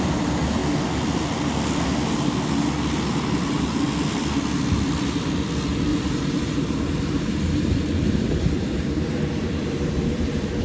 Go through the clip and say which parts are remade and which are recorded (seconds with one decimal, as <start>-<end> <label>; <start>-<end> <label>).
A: 0.0-5.9 recorded; 5.9-10.6 remade